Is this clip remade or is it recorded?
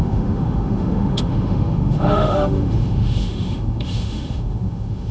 remade